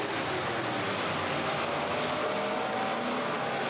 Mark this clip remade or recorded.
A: recorded